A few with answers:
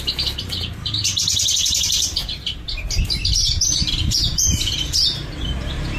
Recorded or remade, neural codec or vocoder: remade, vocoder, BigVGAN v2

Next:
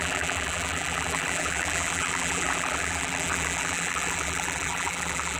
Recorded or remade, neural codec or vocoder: remade, vocoder, BigVGAN v2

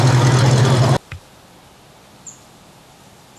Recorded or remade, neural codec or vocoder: recorded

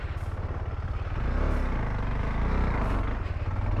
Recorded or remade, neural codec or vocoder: recorded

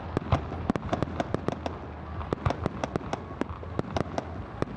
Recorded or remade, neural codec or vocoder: recorded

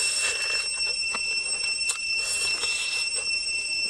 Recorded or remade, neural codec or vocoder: recorded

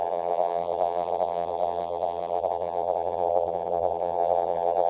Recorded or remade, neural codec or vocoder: remade, vocoder, BigVGAN v2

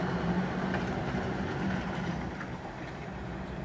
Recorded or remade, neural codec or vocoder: remade, vocoder, BigVGAN v2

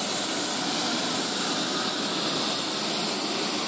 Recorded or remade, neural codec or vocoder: recorded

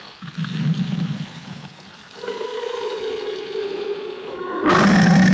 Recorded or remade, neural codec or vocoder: recorded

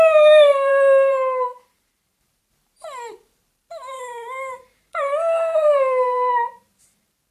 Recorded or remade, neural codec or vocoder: remade, vocoder, BigVGAN v2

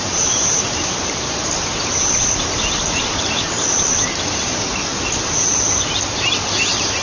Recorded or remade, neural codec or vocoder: remade, vocoder, BigVGAN v2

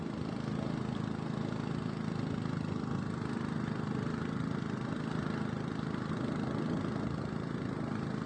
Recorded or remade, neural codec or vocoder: recorded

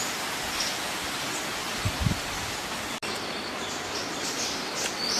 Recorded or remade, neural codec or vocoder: recorded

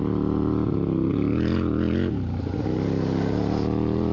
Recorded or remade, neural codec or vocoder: recorded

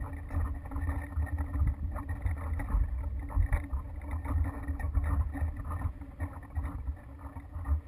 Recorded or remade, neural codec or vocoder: recorded